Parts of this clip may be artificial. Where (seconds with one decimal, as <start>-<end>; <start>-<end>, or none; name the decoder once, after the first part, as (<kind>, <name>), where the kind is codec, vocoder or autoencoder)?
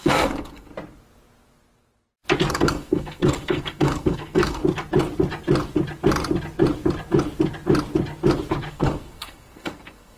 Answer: 0.0-0.7 (codec, SNAC); 2.5-4.6; 8.7-10.2